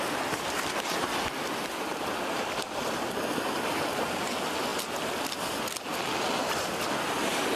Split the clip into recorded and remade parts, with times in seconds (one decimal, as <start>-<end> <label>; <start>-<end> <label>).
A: 0.0-1.9 recorded; 1.9-2.8 remade; 2.8-7.6 recorded